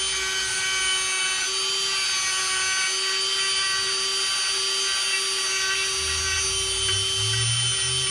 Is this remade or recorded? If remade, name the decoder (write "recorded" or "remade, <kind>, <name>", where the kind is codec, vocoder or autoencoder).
recorded